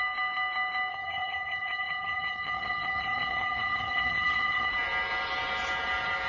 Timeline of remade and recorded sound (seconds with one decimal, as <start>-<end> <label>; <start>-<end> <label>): 0.0-0.9 recorded; 0.9-4.7 remade; 4.7-6.3 recorded